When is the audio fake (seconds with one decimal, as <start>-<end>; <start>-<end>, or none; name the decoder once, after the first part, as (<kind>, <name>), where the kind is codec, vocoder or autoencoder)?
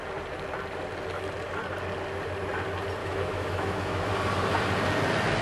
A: 3.0-4.1 (autoencoder, DAC-VAE)